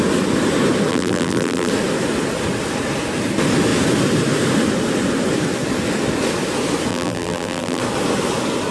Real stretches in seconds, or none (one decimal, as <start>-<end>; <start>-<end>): 0.0-0.9; 1.7-6.9; 7.8-8.7